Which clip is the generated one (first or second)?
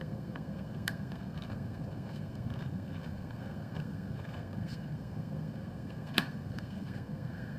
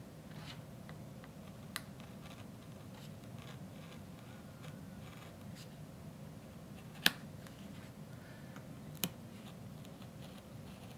first